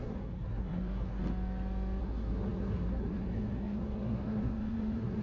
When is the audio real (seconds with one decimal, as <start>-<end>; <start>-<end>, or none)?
1.2-2.0